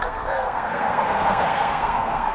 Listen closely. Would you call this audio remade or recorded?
remade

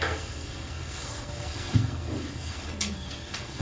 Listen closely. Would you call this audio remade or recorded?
remade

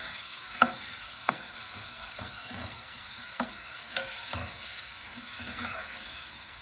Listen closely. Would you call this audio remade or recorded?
remade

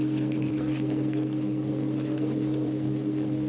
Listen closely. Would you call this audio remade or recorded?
remade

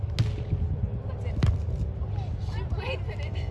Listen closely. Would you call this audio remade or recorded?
recorded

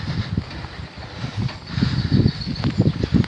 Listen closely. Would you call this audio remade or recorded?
recorded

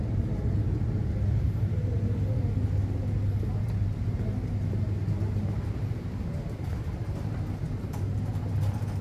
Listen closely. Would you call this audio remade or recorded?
recorded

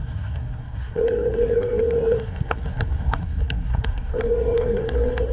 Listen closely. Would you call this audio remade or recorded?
remade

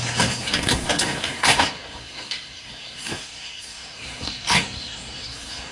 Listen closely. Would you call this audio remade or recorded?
remade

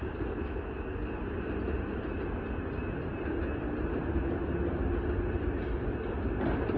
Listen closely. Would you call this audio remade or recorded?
recorded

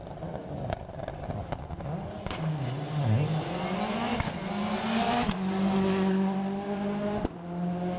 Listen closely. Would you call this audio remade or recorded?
recorded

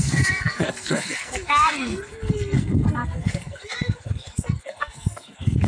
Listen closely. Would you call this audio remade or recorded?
remade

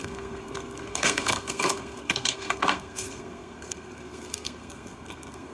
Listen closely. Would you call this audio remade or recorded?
remade